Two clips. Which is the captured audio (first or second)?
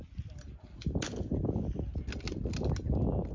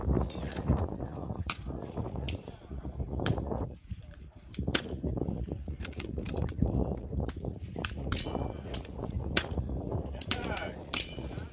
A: first